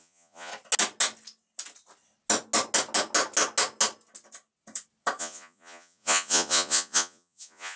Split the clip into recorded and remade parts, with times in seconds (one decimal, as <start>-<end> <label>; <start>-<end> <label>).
0.0-0.5 remade; 0.5-5.2 recorded; 5.2-7.8 remade